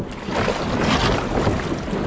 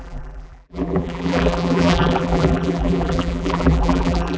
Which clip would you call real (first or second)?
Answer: first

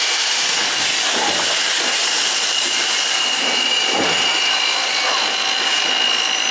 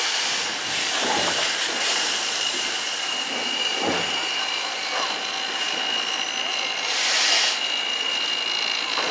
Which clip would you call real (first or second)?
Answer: first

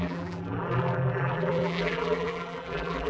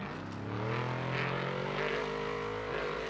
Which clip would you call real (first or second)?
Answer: second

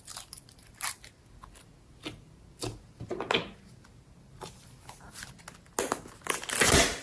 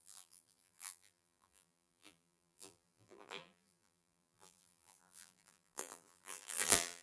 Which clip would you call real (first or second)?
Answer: first